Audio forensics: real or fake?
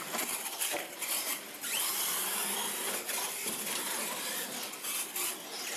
real